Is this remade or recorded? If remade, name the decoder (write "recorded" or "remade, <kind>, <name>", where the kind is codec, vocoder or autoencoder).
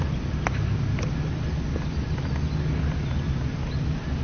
recorded